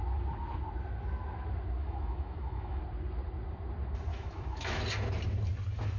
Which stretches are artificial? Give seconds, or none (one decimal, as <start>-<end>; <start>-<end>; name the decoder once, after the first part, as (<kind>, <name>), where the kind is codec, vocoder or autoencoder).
1.8-2.8 (autoencoder, DAC-VAE); 4.1-4.8